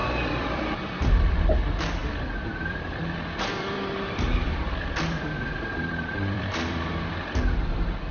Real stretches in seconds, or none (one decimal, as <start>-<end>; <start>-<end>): 1.3-2.0; 6.9-8.1